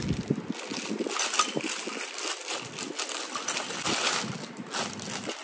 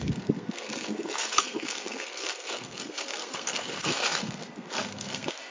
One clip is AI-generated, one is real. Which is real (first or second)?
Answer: first